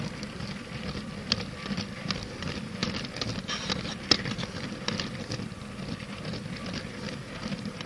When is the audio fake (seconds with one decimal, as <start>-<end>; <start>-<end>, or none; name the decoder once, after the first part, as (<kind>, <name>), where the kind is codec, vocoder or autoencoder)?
none